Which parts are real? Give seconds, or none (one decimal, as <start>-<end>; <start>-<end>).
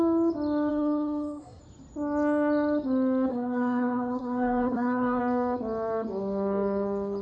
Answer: 0.0-0.7; 1.6-3.3; 5.2-7.2